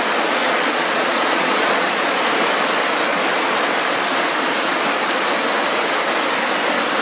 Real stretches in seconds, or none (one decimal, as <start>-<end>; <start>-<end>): 0.0-0.4; 2.2-7.0